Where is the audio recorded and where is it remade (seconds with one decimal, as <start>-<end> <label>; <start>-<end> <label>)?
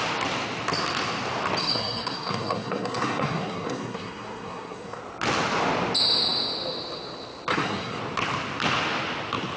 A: 0.0-1.6 recorded; 1.6-5.0 remade; 5.0-7.5 recorded; 7.5-8.0 remade; 8.0-9.6 recorded